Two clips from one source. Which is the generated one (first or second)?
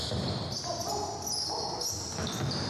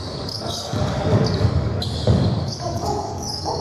second